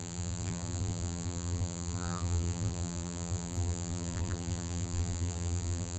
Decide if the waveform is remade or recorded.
remade